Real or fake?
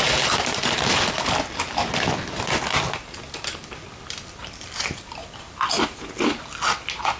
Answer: real